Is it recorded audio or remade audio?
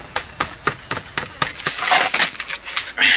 remade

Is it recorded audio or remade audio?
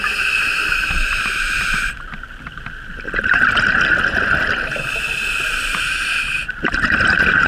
recorded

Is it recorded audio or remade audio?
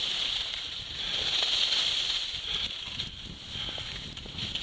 recorded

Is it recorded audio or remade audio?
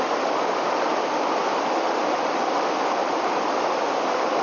recorded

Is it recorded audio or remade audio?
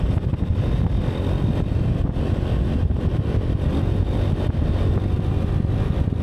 recorded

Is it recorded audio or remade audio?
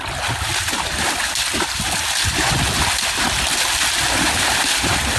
recorded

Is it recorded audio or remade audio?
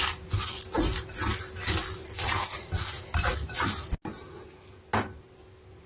recorded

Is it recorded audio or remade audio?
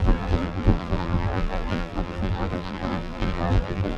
remade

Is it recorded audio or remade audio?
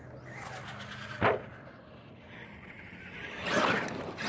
recorded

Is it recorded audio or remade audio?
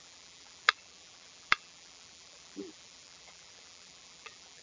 remade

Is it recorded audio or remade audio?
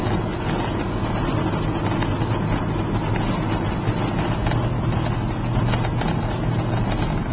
recorded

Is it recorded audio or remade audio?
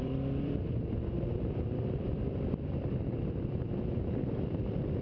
remade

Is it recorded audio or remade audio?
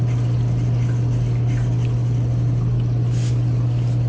recorded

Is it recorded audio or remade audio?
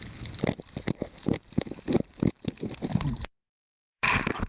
remade